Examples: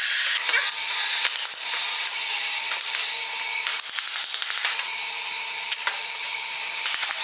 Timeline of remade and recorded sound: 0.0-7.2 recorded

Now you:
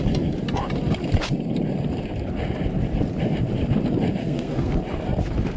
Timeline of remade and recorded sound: 0.0-4.2 recorded; 4.2-4.8 remade; 4.8-5.6 recorded

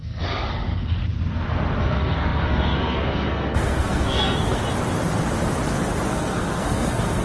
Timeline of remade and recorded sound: 0.0-1.0 remade; 1.0-1.8 recorded; 1.8-4.6 remade; 4.6-6.1 recorded; 6.1-7.2 remade

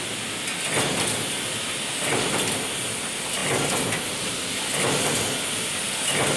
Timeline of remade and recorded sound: 0.0-6.4 recorded

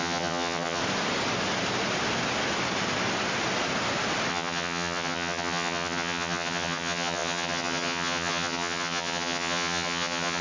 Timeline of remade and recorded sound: 0.0-0.8 remade; 0.8-4.3 recorded; 4.3-10.4 remade

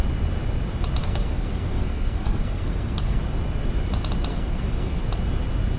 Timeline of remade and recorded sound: 0.0-1.0 recorded; 1.0-3.2 remade; 3.2-4.3 recorded; 4.3-5.0 remade; 5.0-5.8 recorded